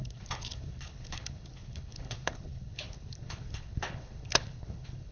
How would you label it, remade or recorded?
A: remade